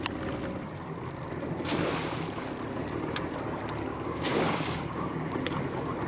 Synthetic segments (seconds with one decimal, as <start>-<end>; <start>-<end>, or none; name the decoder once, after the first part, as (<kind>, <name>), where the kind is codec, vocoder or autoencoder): 3.9-5.4 (codec, DAC)